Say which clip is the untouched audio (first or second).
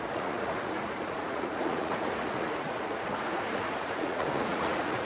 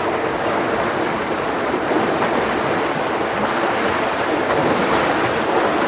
second